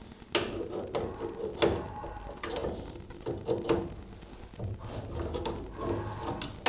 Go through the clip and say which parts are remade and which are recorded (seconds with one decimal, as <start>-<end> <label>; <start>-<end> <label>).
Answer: 0.0-6.7 recorded